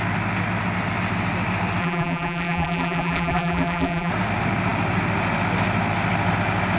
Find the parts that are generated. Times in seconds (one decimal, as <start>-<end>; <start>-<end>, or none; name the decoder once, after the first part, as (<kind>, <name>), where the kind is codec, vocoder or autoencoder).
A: 1.8-4.1 (vocoder, BigVGAN v2)